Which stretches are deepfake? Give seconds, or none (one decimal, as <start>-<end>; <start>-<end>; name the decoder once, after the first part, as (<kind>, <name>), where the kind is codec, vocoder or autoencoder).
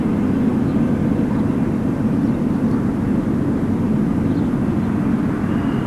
none